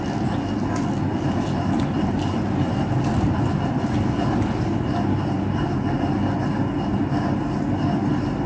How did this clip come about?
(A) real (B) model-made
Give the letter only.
A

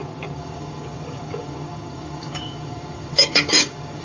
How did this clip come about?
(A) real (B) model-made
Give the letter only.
B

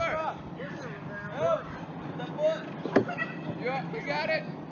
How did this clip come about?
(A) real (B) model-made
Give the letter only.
A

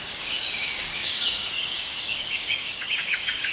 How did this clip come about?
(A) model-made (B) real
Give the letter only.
A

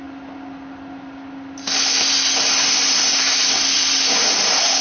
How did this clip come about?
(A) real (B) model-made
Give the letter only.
A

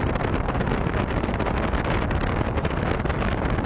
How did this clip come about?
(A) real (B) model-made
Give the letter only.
A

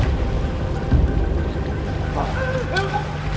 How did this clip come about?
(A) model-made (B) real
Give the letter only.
B